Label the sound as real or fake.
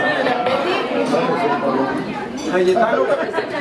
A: fake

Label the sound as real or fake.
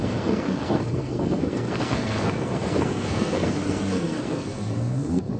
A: fake